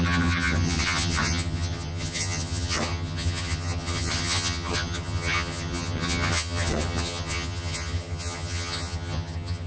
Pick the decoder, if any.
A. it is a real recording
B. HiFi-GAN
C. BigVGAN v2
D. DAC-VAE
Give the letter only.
B